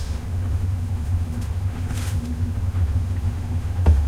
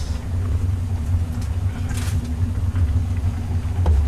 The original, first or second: second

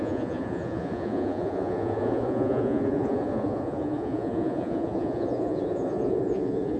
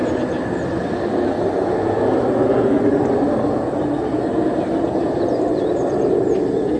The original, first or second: second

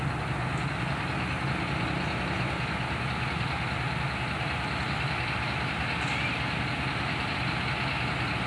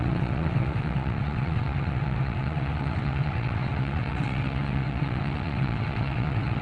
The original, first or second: first